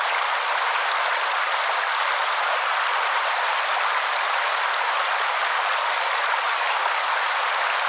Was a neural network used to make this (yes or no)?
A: no